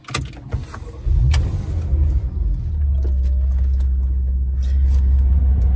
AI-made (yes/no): no